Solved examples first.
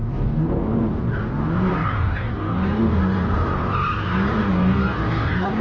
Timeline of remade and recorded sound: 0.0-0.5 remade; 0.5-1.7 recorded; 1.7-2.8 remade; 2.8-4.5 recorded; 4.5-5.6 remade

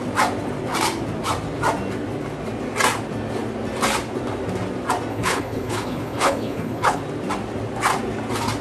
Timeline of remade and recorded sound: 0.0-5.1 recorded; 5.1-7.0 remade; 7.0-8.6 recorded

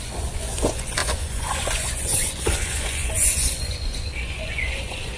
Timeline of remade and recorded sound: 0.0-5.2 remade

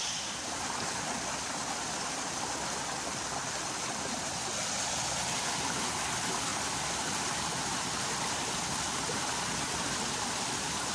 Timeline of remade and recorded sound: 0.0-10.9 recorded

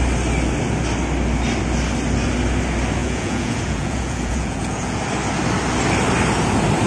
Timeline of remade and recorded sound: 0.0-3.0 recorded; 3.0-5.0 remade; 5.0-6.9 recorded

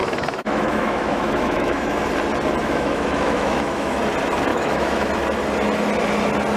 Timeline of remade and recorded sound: 0.0-2.0 remade; 2.0-2.6 recorded; 2.6-4.0 remade; 4.0-4.5 recorded; 4.5-5.1 remade; 5.1-6.6 recorded

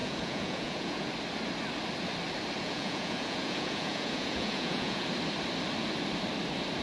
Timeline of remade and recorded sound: 0.0-1.1 remade; 1.1-2.6 recorded; 2.6-5.1 remade; 5.1-6.8 recorded